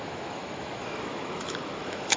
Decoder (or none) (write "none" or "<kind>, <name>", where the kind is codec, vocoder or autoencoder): autoencoder, DAC-VAE